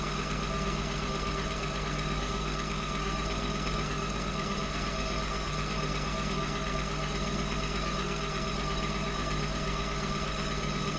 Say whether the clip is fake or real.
fake